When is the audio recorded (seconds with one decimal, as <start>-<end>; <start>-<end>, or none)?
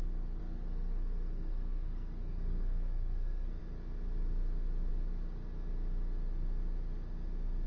0.0-0.4; 3.6-7.7